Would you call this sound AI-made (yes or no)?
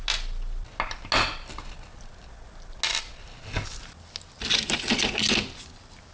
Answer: no